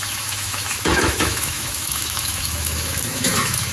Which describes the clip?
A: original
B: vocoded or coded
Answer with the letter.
B